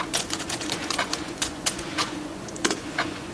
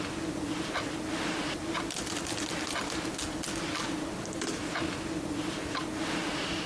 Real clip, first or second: second